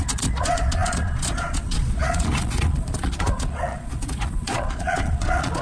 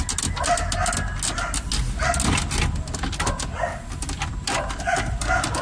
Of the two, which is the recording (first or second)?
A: second